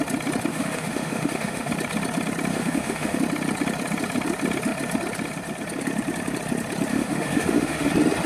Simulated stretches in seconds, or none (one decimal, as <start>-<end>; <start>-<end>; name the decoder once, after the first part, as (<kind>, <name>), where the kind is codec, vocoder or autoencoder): 0.5-1.7 (autoencoder, DAC-VAE); 2.5-3.2; 6.9-7.9